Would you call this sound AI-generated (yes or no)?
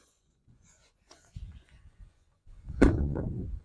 yes